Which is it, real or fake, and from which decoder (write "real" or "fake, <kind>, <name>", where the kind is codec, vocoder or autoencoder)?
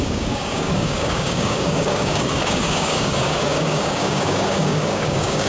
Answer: fake, codec, DAC